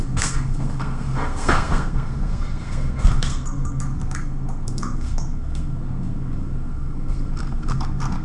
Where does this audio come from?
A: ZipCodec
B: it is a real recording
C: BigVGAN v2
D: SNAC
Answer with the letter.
D